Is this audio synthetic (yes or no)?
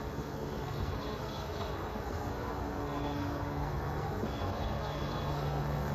yes